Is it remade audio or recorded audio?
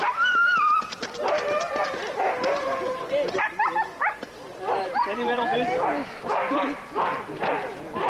remade